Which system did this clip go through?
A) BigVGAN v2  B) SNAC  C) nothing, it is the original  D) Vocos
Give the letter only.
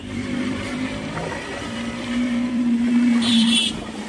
A